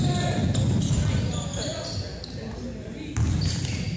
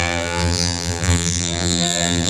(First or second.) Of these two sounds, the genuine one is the first